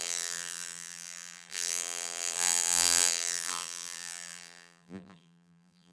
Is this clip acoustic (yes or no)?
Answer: no